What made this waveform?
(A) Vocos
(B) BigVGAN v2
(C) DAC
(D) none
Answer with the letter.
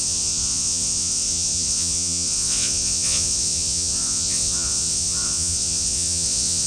A